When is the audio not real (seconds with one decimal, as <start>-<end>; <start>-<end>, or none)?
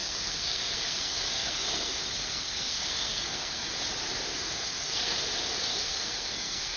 0.0-3.8; 4.3-5.2; 5.7-6.8